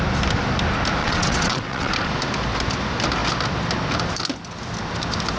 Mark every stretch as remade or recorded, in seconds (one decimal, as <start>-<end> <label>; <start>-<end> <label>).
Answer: 0.0-1.0 recorded; 1.0-1.9 remade; 1.9-5.4 recorded